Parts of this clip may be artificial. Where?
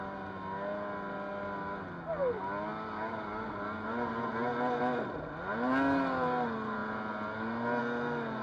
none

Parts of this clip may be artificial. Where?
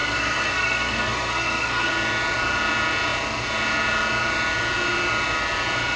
0.0-1.9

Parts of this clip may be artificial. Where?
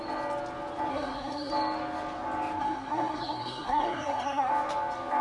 0.9-1.5; 2.6-4.5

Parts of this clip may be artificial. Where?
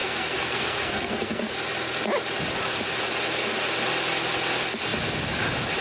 0.0-1.5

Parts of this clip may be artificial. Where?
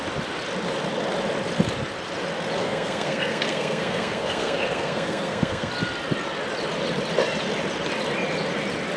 2.6-5.7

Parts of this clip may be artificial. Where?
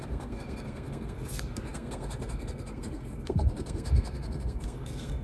0.0-5.2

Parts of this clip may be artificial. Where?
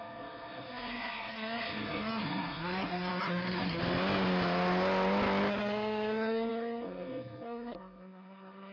0.0-3.8; 5.5-8.7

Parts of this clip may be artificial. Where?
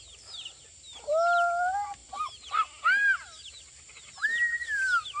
none